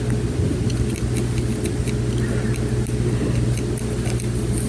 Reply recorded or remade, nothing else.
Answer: recorded